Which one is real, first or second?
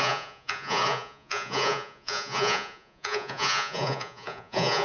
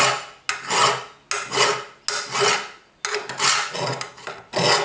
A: second